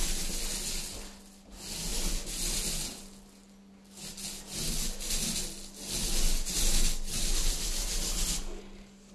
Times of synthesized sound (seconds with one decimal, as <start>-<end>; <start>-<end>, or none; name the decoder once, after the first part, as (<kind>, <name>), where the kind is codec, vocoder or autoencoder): none